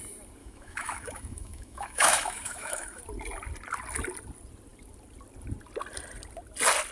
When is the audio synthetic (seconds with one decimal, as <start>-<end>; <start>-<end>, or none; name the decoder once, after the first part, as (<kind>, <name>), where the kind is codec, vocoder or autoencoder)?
0.4-3.0 (autoencoder, DAC-VAE)